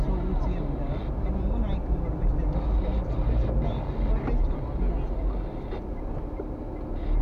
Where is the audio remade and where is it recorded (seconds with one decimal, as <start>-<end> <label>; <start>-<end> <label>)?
0.0-7.2 recorded